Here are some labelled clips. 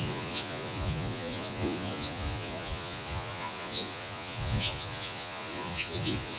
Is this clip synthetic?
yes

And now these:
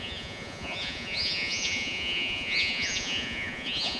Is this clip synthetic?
yes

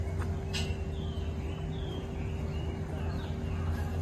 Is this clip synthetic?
no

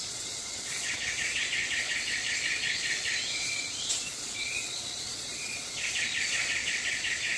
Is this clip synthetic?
yes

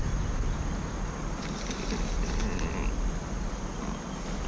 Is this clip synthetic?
no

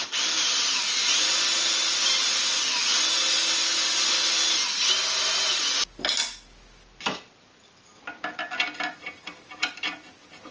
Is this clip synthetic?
no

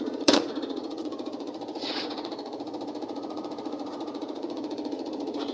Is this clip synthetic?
yes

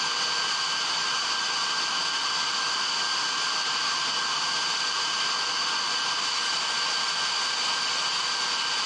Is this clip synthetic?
no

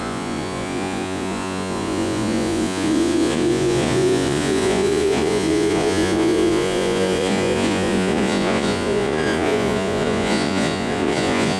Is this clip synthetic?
yes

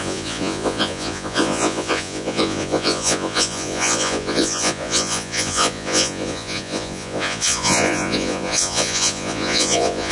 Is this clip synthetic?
yes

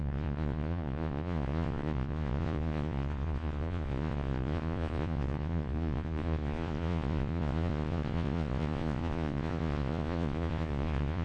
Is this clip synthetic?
yes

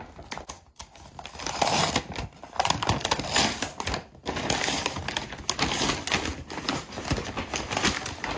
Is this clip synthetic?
no